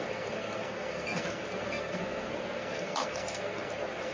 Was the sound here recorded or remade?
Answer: remade